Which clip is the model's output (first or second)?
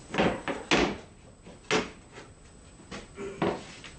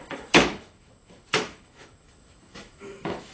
second